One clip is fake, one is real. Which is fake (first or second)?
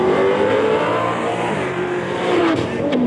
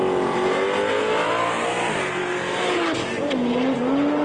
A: first